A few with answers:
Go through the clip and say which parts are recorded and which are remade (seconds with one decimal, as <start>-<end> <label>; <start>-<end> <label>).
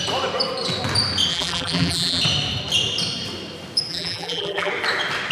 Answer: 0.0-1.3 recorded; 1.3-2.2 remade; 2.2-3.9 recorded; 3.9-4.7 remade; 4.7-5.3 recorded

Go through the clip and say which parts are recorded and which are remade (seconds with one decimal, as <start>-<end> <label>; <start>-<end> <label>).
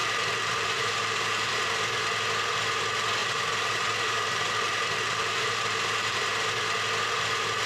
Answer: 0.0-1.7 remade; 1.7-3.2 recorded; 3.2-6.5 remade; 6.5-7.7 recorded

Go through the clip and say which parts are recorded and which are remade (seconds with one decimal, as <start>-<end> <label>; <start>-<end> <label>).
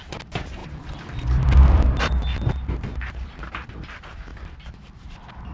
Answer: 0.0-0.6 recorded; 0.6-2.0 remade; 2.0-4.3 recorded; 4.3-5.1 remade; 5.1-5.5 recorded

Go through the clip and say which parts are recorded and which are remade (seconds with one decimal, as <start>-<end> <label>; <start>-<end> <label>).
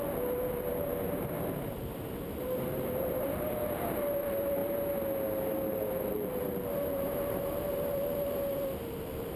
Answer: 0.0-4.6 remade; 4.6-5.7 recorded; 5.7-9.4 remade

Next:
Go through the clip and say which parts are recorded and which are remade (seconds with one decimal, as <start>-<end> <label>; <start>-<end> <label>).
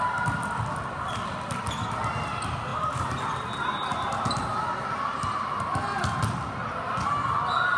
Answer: 0.0-2.7 recorded; 2.7-3.2 remade; 3.2-7.8 recorded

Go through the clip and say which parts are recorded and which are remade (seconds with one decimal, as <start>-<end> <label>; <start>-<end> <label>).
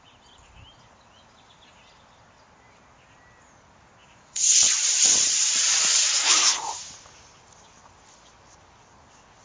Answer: 0.0-4.0 recorded; 4.0-6.1 remade; 6.1-9.4 recorded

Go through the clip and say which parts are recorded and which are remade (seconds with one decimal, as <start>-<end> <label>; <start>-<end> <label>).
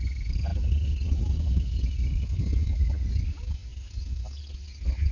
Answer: 0.0-5.1 recorded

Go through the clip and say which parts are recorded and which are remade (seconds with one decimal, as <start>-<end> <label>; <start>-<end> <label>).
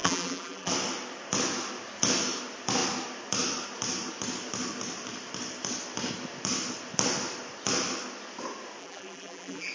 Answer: 0.0-0.7 remade; 0.7-8.8 recorded; 8.8-9.7 remade